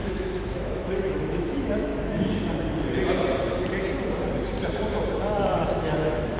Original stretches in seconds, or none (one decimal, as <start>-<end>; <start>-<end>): 1.9-5.7